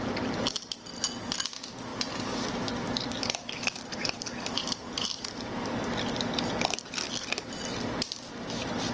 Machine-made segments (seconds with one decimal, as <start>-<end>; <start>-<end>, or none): none